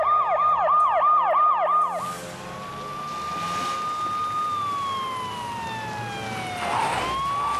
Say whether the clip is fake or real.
real